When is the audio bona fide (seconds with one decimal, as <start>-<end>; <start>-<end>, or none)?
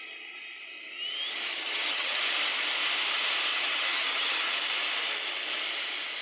0.0-1.5; 2.2-3.5; 4.5-6.2